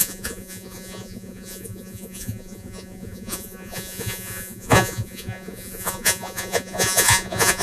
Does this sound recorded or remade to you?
remade